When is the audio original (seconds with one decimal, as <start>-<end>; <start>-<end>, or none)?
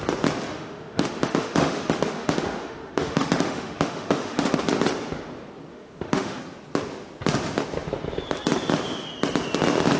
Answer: 0.0-0.5; 4.6-5.7; 6.4-10.0